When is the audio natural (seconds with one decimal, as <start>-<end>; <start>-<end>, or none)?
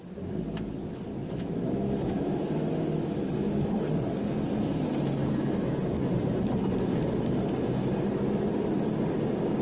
0.0-1.1; 3.9-5.2; 5.7-9.6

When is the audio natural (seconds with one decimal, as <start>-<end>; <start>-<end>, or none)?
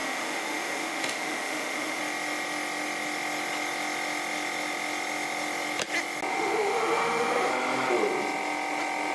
2.0-6.3; 7.5-9.1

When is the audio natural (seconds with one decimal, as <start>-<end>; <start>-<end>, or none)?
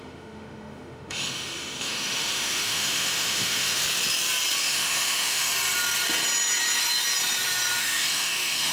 3.8-4.6; 5.5-7.8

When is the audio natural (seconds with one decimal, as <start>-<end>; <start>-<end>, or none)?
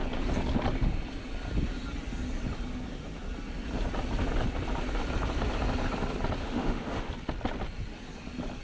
0.0-6.4; 7.1-8.6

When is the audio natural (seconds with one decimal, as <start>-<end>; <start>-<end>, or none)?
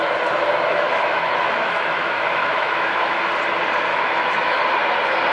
0.0-0.7; 3.2-3.9; 4.6-5.3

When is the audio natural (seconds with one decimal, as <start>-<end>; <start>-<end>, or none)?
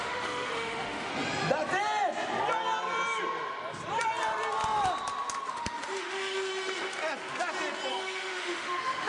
1.1-5.5; 6.5-7.9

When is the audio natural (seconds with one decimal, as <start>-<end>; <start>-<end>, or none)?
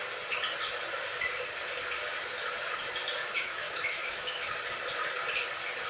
0.0-3.2; 4.5-5.9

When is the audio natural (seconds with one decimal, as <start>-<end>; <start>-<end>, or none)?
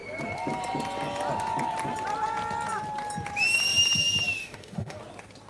0.0-4.4; 5.0-5.5